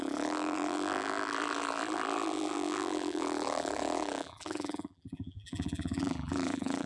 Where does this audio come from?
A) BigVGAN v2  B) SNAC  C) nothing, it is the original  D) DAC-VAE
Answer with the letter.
A